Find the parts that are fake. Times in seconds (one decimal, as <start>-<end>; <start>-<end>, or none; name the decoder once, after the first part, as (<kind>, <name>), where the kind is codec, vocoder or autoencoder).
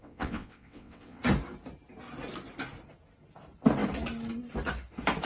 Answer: 0.0-1.2 (vocoder, WaveNeXt)